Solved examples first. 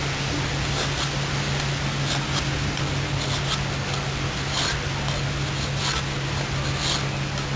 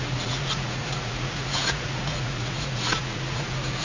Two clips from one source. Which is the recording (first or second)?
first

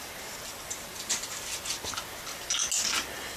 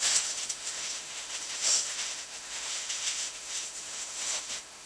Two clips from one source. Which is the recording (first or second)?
first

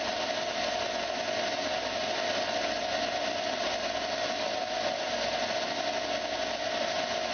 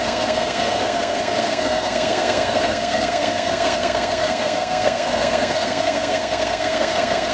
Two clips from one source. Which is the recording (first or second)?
first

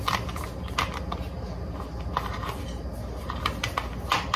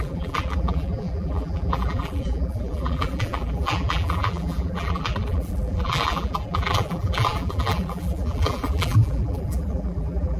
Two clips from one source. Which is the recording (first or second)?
first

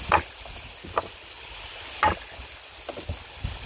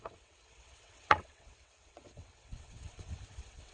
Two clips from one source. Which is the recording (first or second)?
first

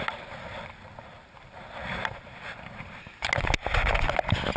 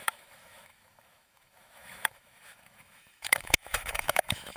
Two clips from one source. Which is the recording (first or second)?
first